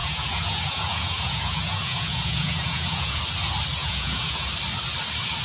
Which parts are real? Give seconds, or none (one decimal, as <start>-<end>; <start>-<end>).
3.2-3.8; 4.5-5.4